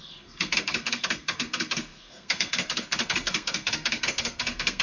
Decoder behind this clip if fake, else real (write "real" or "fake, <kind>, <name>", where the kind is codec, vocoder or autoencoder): fake, codec, SNAC